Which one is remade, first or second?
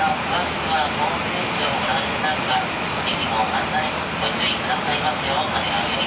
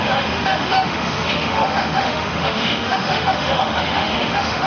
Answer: second